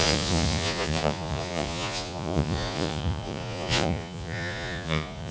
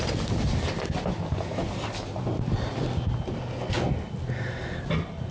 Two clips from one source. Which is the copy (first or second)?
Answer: first